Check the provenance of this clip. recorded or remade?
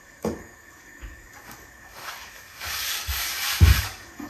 remade